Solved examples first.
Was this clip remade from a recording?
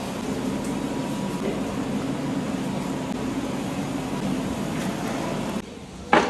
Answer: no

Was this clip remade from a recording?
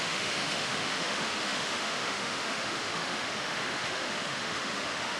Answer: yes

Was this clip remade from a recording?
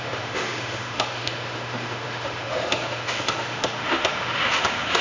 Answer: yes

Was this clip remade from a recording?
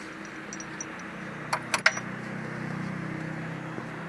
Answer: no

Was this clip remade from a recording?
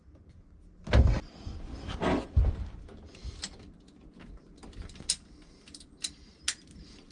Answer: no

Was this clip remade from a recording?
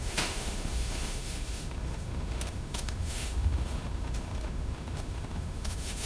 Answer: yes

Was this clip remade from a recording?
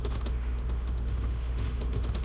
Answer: yes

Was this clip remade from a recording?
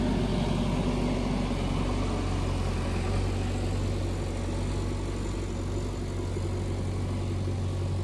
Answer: no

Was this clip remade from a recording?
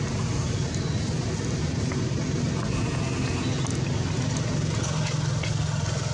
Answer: no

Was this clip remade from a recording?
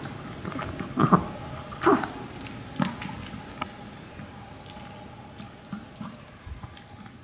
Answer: no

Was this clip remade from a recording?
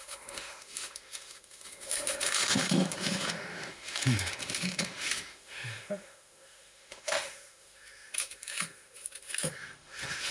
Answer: yes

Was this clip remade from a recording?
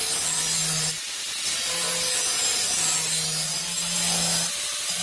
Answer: no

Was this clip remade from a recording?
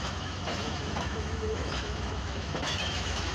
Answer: yes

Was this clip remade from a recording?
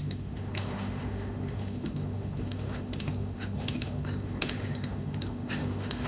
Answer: yes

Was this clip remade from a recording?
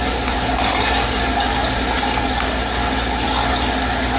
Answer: no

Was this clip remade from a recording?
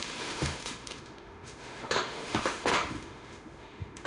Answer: yes